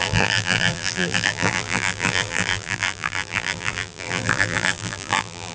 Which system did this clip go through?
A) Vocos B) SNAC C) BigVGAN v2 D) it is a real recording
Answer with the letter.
C